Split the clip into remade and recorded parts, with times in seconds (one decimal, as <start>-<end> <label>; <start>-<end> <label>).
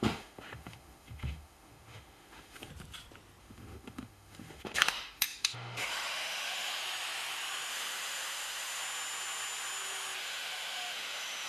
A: 0.0-2.7 remade; 2.7-3.4 recorded; 3.4-6.8 remade; 6.8-7.7 recorded; 7.7-8.8 remade; 8.8-10.2 recorded; 10.2-11.5 remade